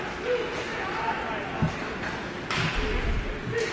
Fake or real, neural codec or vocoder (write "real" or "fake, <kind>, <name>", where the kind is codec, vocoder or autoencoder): real